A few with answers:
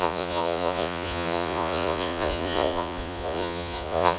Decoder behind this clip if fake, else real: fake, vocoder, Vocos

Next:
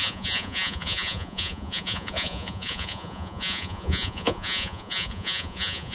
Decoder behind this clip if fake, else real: fake, vocoder, Vocos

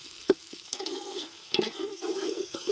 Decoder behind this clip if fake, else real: fake, codec, SNAC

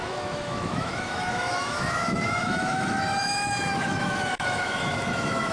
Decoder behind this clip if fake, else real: fake, autoencoder, DAC-VAE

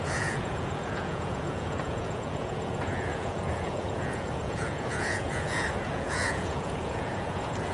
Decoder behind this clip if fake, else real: fake, vocoder, Vocos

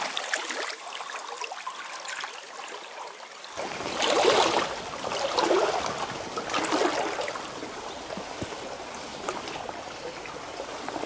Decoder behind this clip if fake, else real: real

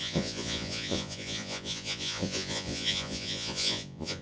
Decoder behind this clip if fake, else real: fake, vocoder, Vocos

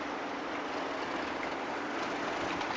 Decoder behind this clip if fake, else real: real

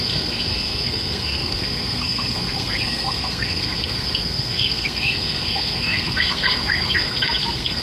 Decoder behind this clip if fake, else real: fake, codec, SNAC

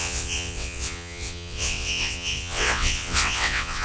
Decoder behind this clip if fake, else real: fake, vocoder, WaveNeXt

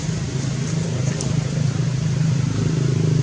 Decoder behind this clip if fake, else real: fake, vocoder, BigVGAN v2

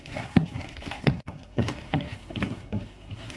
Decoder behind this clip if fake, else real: fake, codec, SNAC